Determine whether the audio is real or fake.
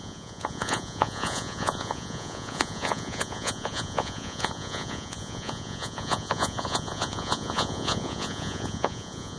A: fake